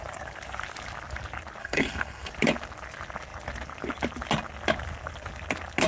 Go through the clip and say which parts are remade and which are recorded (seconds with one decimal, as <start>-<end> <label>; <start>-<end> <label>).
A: 0.0-1.6 recorded; 1.6-2.3 remade; 2.3-5.9 recorded